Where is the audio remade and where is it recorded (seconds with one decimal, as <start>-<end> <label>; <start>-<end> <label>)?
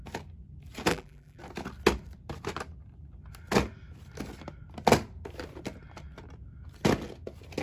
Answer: 0.0-0.9 recorded; 0.9-1.4 remade; 1.4-7.6 recorded